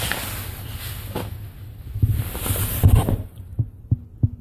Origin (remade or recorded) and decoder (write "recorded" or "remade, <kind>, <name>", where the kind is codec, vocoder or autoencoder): recorded